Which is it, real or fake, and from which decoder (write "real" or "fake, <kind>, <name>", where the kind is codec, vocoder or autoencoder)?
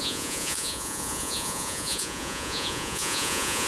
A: fake, vocoder, Vocos